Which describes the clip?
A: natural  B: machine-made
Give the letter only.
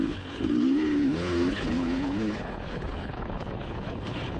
B